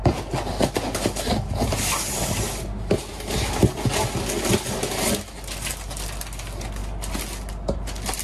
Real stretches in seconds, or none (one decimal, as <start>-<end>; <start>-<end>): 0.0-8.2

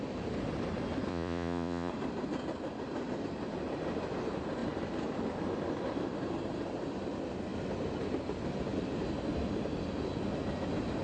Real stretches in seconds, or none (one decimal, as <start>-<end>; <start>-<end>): 0.0-1.1; 1.9-11.0

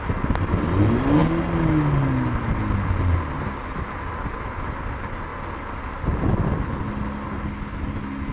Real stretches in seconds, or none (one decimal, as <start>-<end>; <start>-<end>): 0.0-8.3

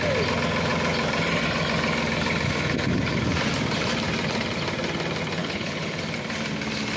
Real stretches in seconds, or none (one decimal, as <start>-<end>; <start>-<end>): 0.0-5.4; 6.0-7.0

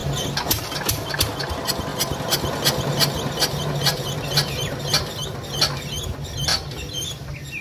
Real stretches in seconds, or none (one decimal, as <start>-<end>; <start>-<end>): 0.0-3.9; 4.9-6.5

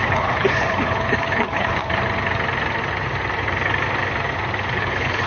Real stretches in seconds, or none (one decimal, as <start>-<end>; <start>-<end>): 1.8-4.7

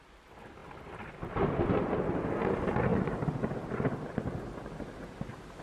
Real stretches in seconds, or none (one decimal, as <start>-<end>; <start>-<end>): 0.0-5.6

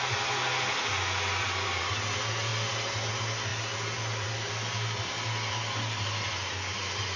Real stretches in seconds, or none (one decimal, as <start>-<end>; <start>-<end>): 0.0-7.2